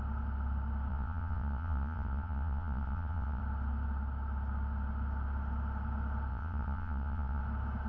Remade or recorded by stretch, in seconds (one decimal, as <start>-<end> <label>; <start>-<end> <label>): 0.0-0.9 recorded; 0.9-3.4 remade; 3.4-6.3 recorded; 6.3-7.4 remade; 7.4-7.9 recorded